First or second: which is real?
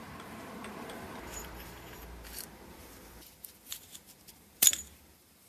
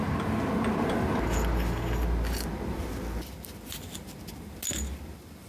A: second